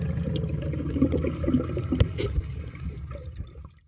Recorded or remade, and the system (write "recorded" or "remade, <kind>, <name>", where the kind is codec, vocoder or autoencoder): recorded